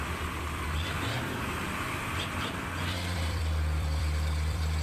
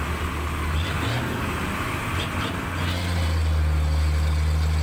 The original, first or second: second